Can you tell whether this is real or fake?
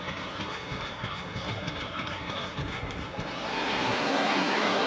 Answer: fake